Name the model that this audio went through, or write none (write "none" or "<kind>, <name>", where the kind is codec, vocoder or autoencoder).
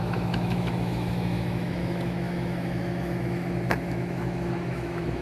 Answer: autoencoder, DAC-VAE